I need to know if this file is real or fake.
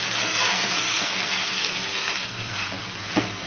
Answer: fake